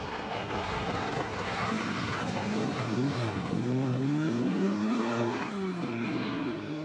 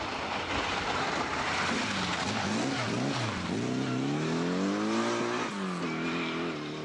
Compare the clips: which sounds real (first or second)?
second